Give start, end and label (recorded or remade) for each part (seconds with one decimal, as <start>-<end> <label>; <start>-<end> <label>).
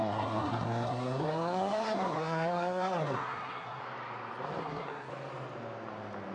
0.0-3.8 remade; 3.8-4.6 recorded; 4.6-5.1 remade; 5.1-6.3 recorded